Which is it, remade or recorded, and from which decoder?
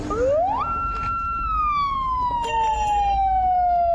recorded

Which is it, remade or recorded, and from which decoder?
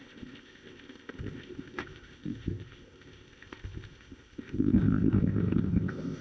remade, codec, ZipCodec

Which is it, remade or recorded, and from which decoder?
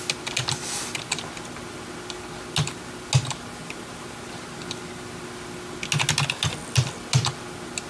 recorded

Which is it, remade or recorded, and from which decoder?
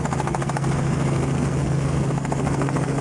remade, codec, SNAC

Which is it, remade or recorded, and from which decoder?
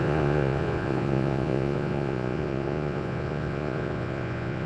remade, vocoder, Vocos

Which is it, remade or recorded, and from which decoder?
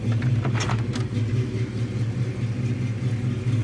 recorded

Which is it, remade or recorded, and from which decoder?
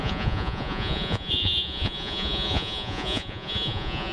remade, vocoder, Vocos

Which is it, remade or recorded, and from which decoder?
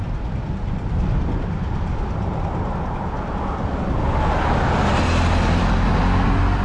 recorded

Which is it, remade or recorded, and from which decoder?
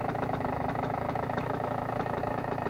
remade, autoencoder, DAC-VAE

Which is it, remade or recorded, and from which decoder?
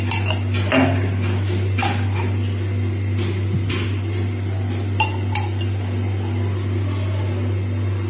recorded